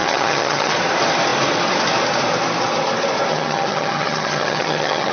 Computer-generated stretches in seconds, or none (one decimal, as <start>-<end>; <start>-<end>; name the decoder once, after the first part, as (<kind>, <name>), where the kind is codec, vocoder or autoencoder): 0.0-0.7 (vocoder, HiFi-GAN); 3.3-5.1